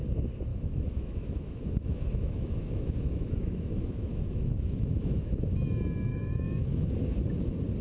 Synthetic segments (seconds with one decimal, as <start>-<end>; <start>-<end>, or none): 0.5-5.2; 6.1-6.9